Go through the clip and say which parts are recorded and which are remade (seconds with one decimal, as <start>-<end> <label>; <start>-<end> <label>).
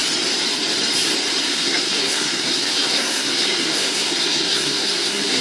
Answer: 0.0-1.4 recorded; 1.4-5.4 remade